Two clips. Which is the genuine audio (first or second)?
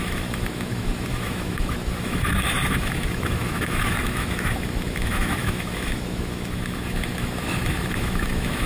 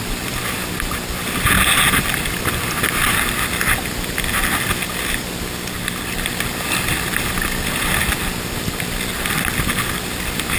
second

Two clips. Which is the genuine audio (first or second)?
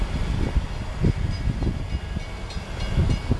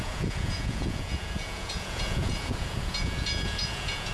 first